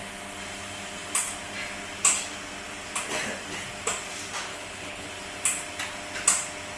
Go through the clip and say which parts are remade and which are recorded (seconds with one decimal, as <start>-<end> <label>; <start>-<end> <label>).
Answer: 0.0-4.5 recorded; 4.5-5.1 remade; 5.1-6.8 recorded